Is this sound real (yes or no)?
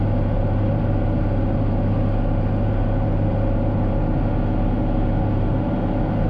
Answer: yes